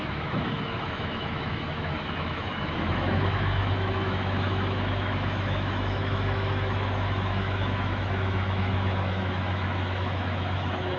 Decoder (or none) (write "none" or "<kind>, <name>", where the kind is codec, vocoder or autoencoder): autoencoder, DAC-VAE